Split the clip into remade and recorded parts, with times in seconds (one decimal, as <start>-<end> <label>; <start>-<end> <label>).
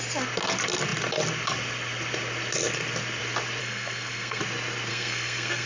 0.0-3.6 recorded; 3.6-4.4 remade; 4.4-4.9 recorded; 4.9-5.7 remade